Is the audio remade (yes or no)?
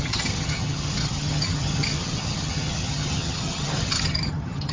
yes